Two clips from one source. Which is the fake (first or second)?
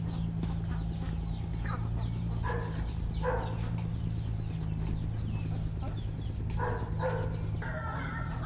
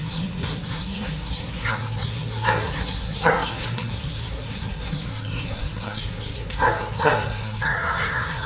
second